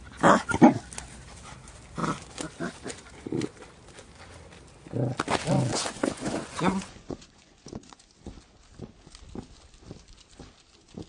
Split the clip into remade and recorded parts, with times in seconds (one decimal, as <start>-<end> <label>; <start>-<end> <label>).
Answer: 0.0-5.7 recorded; 5.7-8.1 remade; 8.1-11.1 recorded